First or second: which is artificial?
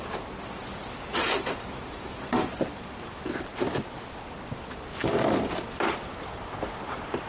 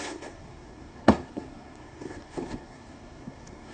second